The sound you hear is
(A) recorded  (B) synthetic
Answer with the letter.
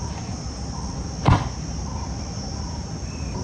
A